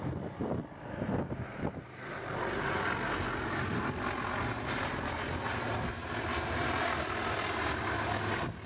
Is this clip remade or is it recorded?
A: recorded